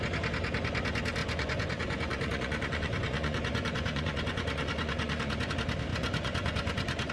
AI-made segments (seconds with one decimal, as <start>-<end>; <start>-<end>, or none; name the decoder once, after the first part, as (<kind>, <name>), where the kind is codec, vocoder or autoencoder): 1.2-5.5 (vocoder, Vocos); 5.9-7.1